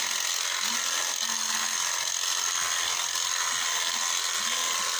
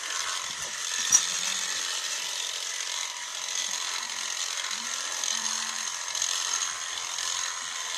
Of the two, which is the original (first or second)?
first